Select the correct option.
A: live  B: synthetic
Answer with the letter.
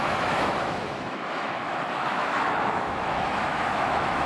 B